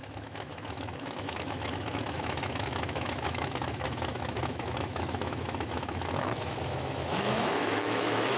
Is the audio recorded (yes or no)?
no